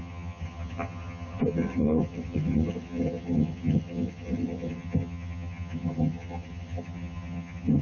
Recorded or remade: remade